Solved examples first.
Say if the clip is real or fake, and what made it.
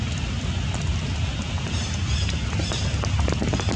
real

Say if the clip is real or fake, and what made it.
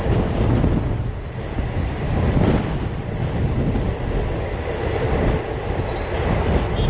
real